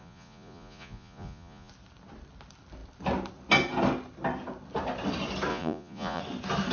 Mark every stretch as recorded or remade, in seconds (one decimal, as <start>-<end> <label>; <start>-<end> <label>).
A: 0.0-1.7 remade; 1.7-5.5 recorded; 5.5-6.2 remade; 6.2-6.7 recorded